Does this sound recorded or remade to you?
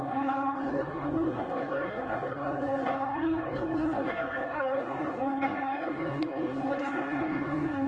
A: remade